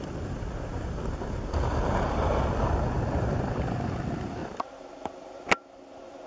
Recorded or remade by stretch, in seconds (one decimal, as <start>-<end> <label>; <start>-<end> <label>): 0.0-6.3 recorded